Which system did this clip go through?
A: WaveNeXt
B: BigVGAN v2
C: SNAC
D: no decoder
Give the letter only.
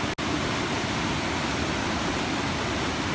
D